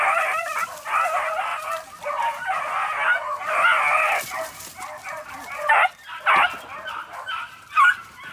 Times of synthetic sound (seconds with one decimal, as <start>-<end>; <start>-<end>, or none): 0.0-1.5; 5.7-8.3